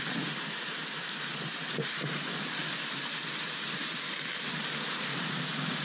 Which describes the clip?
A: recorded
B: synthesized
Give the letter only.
A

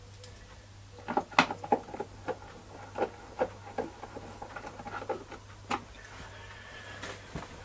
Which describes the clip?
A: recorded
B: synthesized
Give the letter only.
A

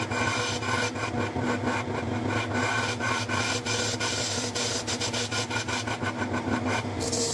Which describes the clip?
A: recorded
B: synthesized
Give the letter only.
A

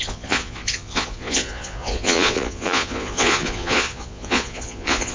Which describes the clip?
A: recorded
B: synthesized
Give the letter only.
B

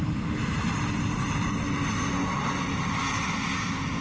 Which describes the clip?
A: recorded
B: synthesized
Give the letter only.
A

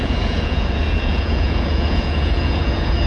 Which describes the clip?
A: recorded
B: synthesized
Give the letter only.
B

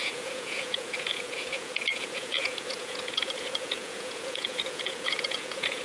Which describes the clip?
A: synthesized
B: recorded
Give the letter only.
A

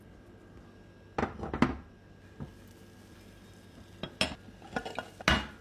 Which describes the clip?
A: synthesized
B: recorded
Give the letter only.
B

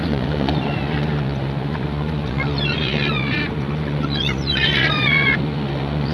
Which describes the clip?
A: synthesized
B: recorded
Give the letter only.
A